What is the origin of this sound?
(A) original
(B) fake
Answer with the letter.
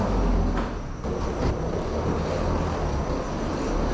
A